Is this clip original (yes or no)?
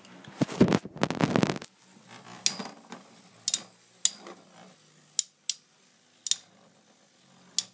yes